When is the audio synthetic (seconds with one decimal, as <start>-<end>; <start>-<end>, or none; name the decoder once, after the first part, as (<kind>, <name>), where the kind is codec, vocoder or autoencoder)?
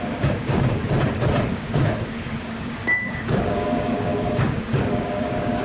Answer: 0.0-0.8 (codec, DAC); 1.5-5.6